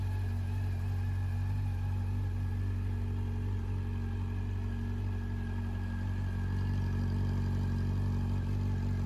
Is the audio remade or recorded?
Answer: recorded